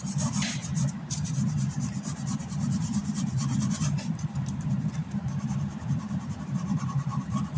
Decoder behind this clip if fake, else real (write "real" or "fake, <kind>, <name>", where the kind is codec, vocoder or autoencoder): fake, vocoder, BigVGAN v2